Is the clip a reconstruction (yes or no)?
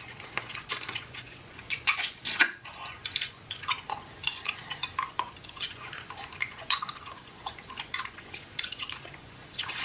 yes